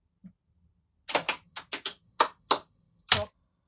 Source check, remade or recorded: recorded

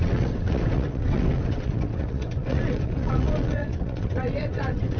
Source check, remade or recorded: remade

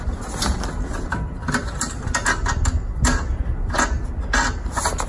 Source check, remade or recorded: recorded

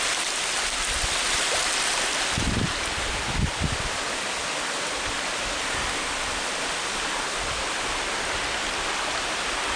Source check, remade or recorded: recorded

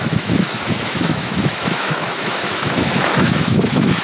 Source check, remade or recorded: remade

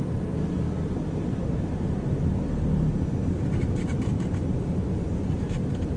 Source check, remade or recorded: recorded